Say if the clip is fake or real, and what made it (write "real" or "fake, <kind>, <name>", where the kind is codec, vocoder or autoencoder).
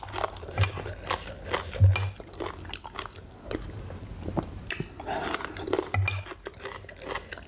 real